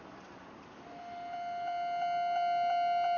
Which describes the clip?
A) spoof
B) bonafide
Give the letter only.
B